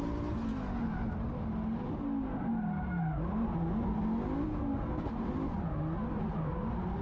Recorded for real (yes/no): yes